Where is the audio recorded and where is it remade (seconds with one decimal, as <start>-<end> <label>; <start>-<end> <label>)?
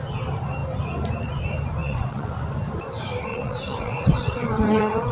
0.0-1.8 recorded; 1.8-2.3 remade; 2.3-3.3 recorded; 3.3-5.1 remade